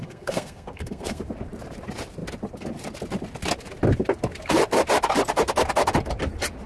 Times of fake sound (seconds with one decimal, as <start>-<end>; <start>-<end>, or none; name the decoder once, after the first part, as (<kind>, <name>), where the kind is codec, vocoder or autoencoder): 0.0-1.2 (codec, SNAC)